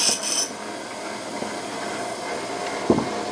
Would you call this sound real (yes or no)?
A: yes